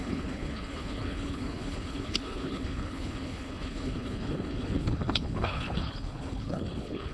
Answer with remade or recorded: remade